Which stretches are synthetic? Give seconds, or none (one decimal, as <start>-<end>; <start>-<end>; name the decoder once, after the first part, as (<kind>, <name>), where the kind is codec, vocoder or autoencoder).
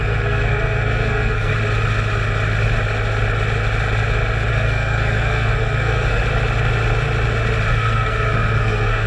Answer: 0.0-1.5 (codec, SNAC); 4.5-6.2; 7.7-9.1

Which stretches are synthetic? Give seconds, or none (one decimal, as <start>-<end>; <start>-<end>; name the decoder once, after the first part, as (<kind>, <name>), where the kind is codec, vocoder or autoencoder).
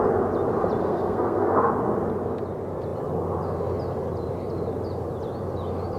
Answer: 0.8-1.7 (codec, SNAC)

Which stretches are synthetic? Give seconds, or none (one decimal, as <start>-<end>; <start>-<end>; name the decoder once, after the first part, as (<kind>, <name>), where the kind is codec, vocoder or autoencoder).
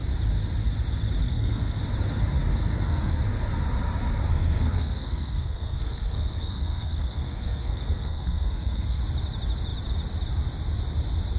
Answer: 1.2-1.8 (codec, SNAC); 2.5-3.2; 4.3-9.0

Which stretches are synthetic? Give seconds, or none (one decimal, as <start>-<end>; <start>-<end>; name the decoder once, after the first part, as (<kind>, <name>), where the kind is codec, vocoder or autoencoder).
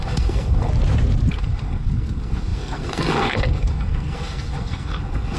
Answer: 0.0-0.7 (codec, SNAC); 1.3-5.4